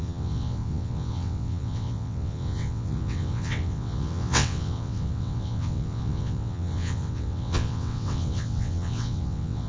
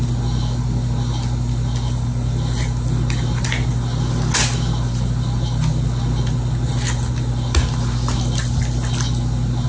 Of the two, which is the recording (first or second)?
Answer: second